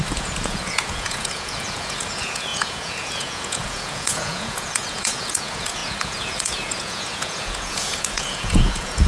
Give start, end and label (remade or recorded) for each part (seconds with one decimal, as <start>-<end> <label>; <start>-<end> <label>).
0.0-9.1 remade